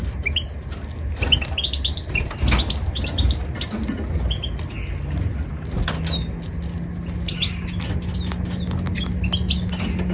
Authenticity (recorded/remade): recorded